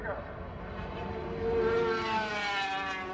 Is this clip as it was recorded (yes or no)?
yes